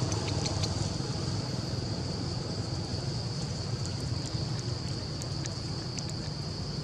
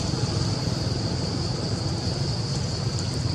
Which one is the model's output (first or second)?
first